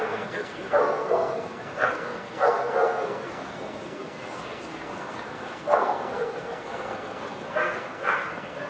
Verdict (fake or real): fake